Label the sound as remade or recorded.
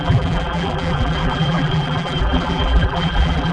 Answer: remade